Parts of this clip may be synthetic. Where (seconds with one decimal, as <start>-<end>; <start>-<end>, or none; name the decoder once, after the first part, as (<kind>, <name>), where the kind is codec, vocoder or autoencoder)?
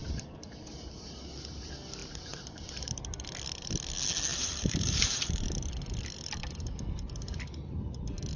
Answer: 0.0-0.7 (vocoder, BigVGAN v2); 2.0-2.9; 4.3-5.4